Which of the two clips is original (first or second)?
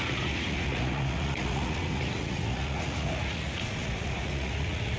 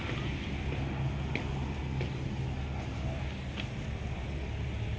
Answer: second